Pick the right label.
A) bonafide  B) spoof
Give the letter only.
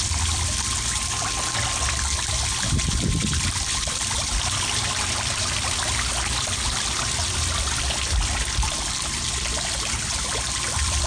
B